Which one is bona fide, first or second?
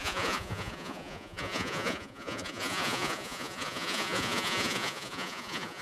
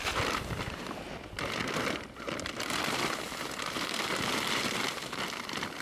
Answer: second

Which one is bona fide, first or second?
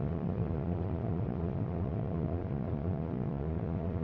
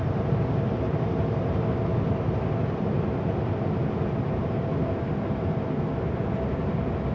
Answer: second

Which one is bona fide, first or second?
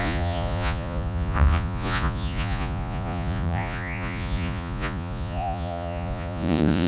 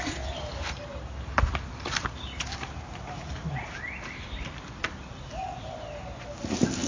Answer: second